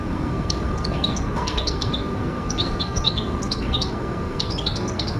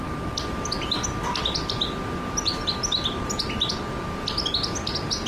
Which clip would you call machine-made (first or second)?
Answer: first